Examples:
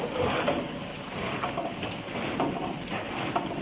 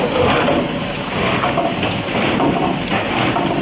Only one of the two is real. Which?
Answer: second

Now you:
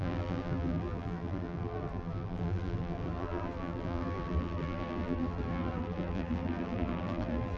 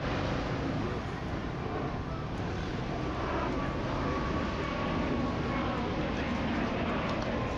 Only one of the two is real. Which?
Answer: second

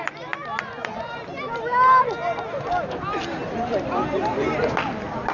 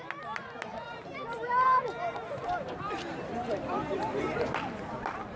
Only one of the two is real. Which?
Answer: first